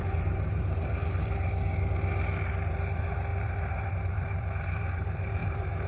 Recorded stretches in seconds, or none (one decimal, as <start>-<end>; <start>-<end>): 1.4-2.7